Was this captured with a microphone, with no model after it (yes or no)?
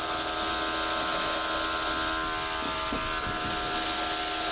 yes